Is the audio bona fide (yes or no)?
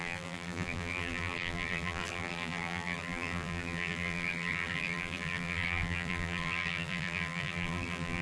no